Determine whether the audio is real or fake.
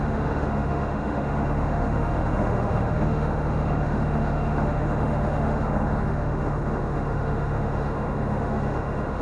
fake